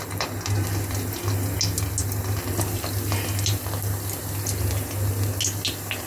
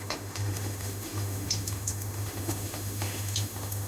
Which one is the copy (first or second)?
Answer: second